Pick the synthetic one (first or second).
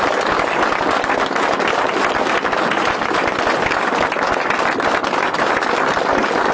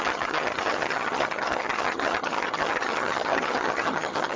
second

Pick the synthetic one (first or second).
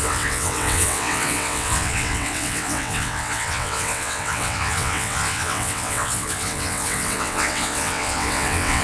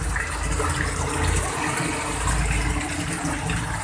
first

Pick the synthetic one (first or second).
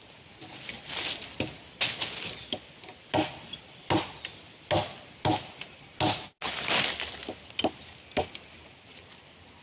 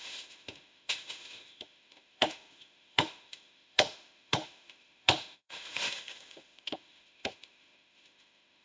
second